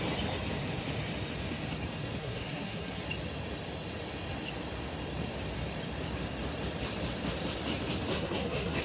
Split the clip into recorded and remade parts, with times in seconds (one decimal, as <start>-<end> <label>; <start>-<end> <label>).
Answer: 0.0-2.2 recorded; 2.2-3.0 remade; 3.0-8.1 recorded; 8.1-8.8 remade